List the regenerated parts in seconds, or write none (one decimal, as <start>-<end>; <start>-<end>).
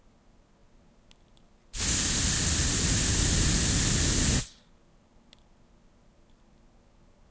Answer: none